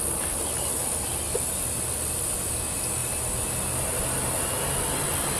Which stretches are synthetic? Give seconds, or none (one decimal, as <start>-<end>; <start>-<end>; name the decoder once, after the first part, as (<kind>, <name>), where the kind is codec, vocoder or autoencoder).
none